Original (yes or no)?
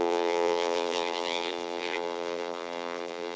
no